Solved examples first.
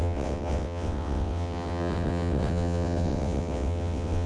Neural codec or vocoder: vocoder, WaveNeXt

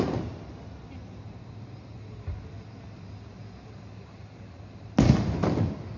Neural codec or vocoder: none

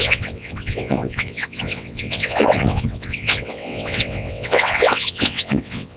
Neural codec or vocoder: vocoder, WaveNeXt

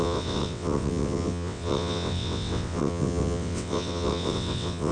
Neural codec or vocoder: vocoder, WaveNeXt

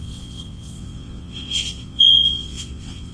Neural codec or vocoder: vocoder, WaveNeXt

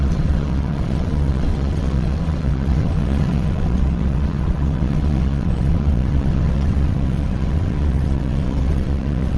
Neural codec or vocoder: vocoder, WaveNeXt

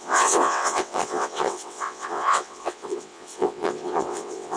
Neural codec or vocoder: vocoder, WaveNeXt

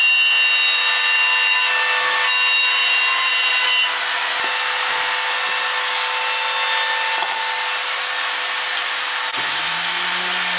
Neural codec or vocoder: none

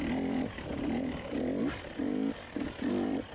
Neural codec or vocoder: none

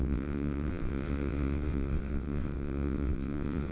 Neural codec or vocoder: vocoder, WaveNeXt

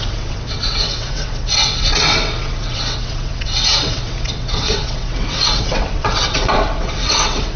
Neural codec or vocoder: vocoder, WaveNeXt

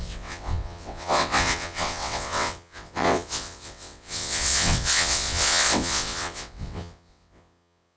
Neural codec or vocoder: vocoder, WaveNeXt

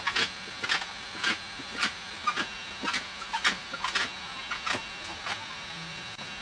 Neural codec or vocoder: none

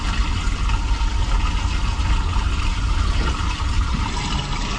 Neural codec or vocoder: none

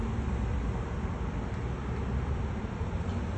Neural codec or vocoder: none